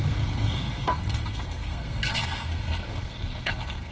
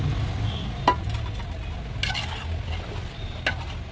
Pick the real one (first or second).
second